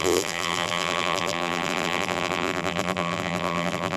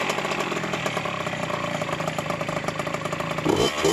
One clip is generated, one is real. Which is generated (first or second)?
first